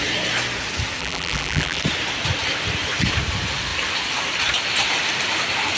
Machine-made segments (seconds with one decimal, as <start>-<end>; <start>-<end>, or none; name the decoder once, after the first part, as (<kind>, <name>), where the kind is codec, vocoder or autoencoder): 1.0-1.8 (vocoder, BigVGAN v2)